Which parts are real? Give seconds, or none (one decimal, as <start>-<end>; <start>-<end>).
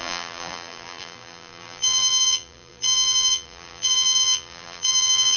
none